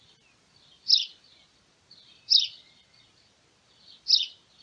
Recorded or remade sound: recorded